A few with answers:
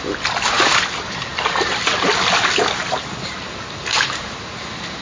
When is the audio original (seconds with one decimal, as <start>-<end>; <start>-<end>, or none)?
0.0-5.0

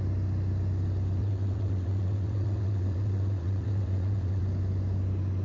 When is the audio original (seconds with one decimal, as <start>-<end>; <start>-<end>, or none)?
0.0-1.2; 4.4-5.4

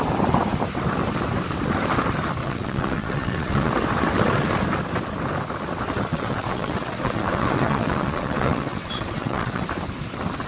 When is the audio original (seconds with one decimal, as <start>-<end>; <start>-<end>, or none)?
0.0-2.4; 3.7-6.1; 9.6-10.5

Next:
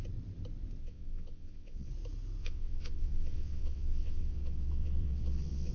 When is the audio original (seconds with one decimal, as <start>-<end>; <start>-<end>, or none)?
0.0-0.8; 1.9-2.4